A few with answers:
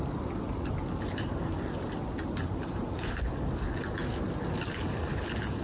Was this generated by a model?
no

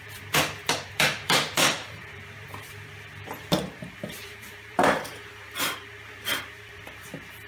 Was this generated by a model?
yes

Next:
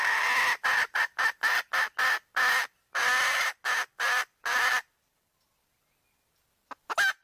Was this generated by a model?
no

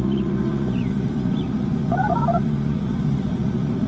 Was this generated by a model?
yes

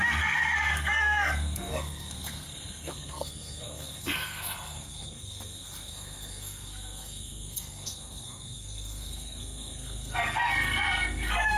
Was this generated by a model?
yes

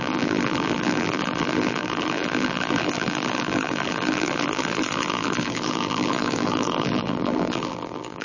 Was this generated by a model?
yes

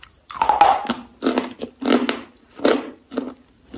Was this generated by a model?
no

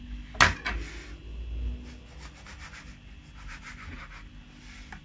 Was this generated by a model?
no